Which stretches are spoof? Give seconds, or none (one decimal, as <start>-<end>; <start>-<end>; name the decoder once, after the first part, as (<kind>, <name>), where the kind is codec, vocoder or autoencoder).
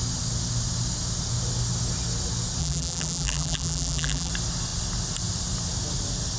2.6-4.3 (vocoder, BigVGAN v2)